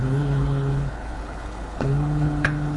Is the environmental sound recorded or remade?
remade